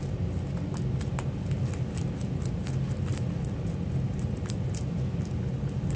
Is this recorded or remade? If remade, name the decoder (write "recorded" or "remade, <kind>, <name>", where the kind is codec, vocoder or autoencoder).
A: recorded